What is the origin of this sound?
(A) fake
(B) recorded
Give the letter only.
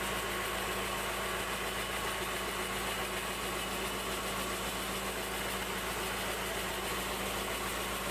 B